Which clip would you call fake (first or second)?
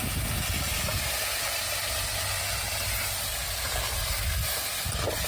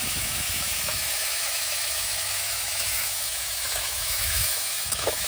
second